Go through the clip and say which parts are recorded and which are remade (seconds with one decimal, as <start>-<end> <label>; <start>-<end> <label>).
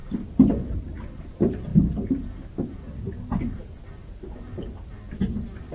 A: 0.0-5.7 recorded